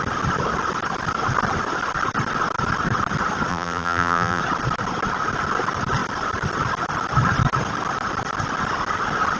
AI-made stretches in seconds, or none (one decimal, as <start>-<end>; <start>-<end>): 3.5-4.4